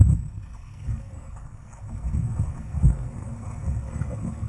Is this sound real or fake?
fake